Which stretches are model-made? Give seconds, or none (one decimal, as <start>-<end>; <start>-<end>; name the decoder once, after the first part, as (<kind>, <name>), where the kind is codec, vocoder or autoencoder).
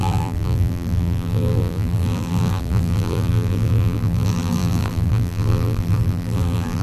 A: 0.0-6.8 (vocoder, BigVGAN v2)